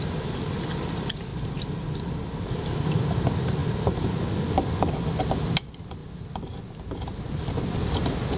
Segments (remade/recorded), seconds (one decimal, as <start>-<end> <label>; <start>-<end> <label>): 0.0-1.3 recorded; 1.3-2.3 remade; 2.3-3.6 recorded; 3.6-4.2 remade; 4.2-8.4 recorded